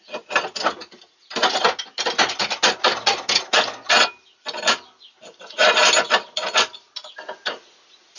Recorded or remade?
recorded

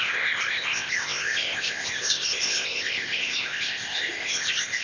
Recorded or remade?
remade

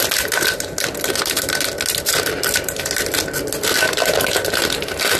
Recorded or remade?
recorded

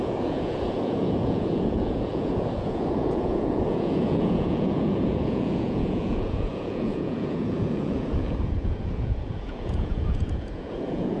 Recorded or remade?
remade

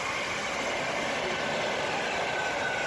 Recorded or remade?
recorded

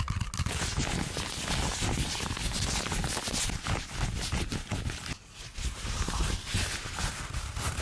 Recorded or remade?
recorded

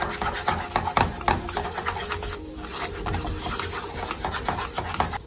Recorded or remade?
recorded